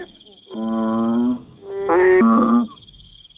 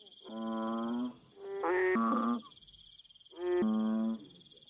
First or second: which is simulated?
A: first